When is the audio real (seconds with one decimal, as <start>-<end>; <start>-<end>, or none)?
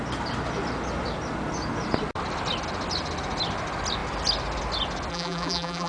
0.0-5.1